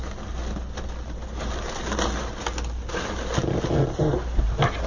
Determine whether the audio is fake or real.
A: real